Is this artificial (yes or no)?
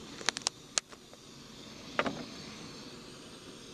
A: no